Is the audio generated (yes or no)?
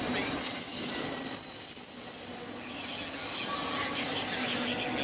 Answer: no